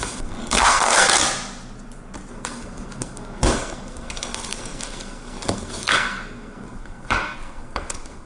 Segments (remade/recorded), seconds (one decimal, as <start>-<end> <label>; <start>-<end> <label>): 0.0-1.2 remade; 1.2-2.3 recorded; 2.3-8.3 remade